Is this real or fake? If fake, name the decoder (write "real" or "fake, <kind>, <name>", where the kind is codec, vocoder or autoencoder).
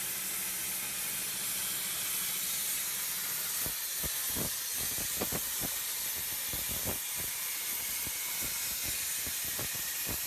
real